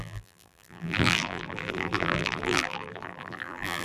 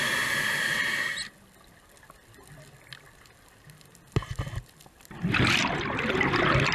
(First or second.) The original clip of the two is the second